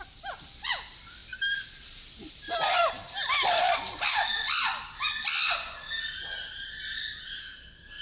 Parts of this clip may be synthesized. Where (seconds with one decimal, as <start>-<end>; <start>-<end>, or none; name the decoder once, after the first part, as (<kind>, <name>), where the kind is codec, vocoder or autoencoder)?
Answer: 7.4-8.0 (codec, SNAC)